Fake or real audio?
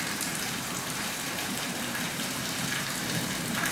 fake